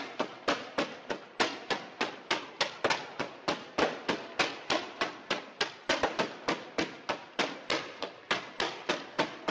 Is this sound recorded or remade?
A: recorded